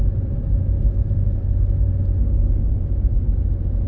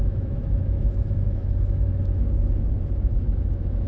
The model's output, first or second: second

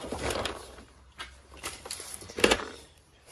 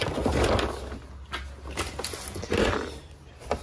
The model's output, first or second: first